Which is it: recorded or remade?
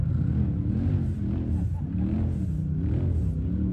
recorded